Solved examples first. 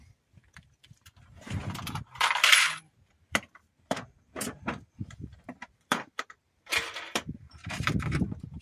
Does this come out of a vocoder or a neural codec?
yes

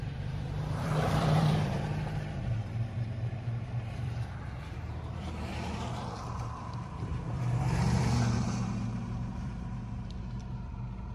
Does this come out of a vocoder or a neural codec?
yes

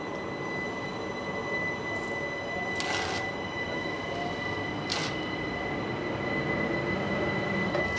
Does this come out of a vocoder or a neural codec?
no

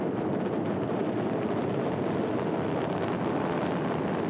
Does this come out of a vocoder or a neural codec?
yes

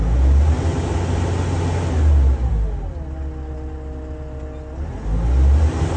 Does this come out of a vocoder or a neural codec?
no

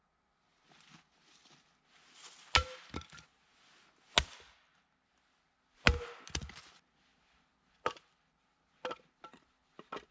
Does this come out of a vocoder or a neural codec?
no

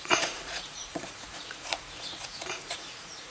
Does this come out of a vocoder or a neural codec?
yes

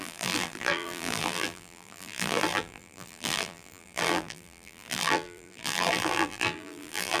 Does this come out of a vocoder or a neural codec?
yes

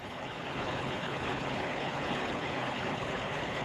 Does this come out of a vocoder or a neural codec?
yes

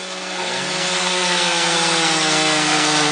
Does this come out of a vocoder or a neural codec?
yes